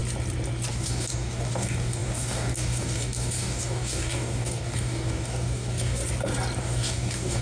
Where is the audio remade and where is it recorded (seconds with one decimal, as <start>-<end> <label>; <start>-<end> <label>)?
0.0-0.7 recorded; 0.7-6.0 remade; 6.0-6.6 recorded; 6.6-7.4 remade